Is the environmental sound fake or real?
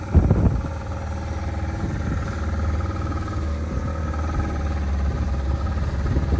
real